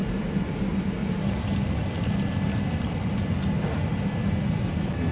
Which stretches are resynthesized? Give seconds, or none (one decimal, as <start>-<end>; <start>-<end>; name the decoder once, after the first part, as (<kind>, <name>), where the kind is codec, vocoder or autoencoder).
1.0-3.9 (vocoder, BigVGAN v2)